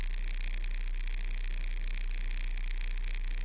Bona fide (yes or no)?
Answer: yes